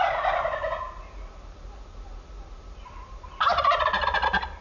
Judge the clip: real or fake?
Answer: real